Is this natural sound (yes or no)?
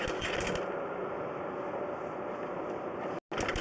yes